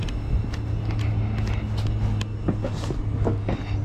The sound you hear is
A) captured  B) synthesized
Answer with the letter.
A